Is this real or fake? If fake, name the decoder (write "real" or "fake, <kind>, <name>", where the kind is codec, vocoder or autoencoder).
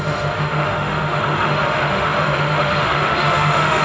fake, autoencoder, DAC-VAE